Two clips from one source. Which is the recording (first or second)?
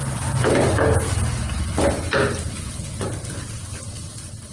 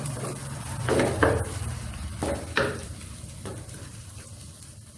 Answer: first